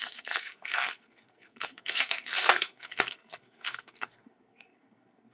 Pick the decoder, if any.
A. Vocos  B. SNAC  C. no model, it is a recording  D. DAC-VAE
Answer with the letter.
B